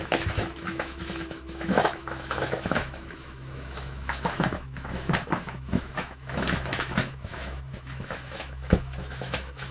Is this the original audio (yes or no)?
no